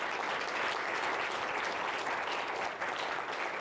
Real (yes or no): yes